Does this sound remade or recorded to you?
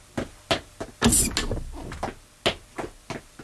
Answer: recorded